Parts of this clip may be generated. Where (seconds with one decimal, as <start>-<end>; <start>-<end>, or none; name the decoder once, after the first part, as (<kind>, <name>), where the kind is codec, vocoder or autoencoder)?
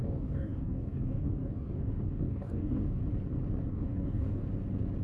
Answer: 0.0-3.0 (codec, DAC); 3.7-4.4